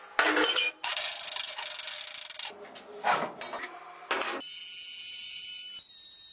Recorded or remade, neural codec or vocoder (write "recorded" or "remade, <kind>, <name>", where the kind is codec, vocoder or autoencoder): recorded